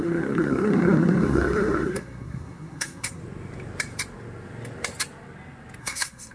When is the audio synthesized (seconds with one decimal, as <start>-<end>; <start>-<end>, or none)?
0.0-3.2; 5.8-6.3